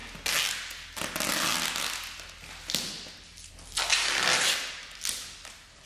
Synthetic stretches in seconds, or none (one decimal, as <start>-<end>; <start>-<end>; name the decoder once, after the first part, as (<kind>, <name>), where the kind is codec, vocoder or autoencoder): none